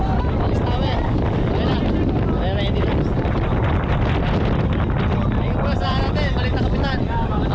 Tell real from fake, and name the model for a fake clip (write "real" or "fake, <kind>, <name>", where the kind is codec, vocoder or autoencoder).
real